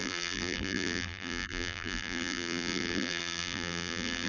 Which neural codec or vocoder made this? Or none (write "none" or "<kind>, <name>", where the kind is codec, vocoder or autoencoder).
vocoder, BigVGAN v2